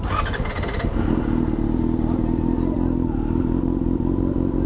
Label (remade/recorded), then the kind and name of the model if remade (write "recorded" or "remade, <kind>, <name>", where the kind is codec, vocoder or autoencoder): recorded